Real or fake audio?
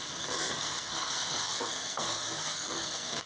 fake